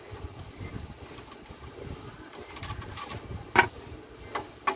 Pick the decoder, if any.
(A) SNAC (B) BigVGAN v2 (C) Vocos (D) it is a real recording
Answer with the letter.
D